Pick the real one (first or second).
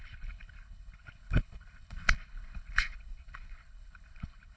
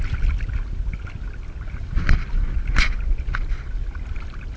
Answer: second